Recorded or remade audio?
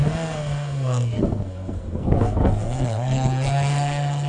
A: remade